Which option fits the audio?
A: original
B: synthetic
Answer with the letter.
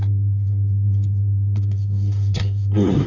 B